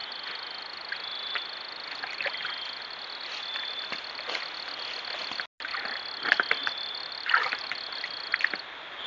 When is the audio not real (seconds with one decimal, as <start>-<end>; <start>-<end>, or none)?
none